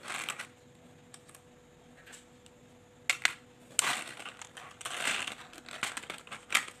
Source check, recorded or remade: recorded